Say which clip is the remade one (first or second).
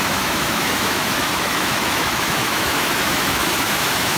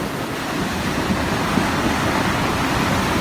first